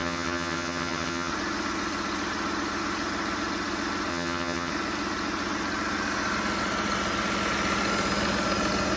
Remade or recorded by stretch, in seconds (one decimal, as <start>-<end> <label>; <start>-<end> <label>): 0.0-1.3 remade; 1.3-4.1 recorded; 4.1-4.7 remade; 4.7-9.0 recorded